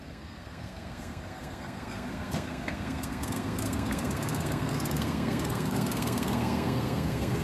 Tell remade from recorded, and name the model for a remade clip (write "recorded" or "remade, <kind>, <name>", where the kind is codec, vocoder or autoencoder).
remade, codec, SNAC